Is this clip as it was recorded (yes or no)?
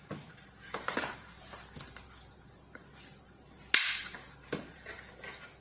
no